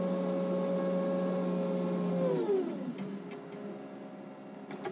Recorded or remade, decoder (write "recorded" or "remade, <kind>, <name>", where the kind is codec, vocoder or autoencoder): recorded